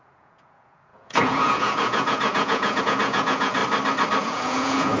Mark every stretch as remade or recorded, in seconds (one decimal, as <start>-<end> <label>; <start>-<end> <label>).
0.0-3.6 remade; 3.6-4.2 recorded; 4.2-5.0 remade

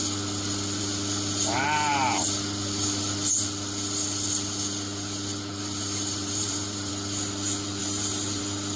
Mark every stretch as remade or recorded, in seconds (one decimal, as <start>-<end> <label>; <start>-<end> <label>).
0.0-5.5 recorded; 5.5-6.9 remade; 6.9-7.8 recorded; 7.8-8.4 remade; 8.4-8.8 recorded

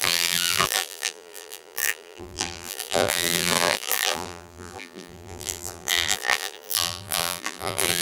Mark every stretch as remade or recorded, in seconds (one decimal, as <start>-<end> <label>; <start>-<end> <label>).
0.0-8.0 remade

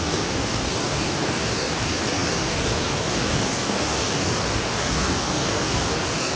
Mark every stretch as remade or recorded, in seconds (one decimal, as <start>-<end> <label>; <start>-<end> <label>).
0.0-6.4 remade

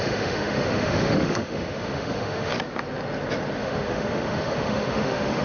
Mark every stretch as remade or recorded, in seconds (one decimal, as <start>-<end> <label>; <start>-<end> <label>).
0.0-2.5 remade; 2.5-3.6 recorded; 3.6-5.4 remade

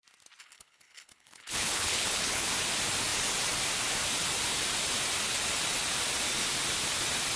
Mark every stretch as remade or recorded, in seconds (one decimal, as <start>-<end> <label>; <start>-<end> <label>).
0.0-0.4 recorded; 0.4-2.5 remade; 2.5-7.4 recorded

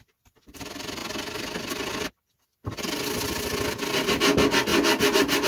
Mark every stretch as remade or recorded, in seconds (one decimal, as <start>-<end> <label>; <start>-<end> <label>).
0.0-5.5 recorded